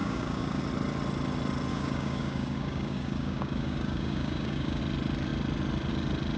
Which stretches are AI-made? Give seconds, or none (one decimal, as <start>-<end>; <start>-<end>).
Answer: 0.0-0.6; 1.7-4.8